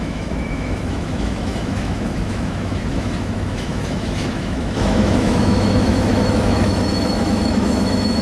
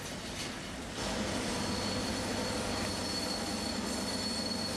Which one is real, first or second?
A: second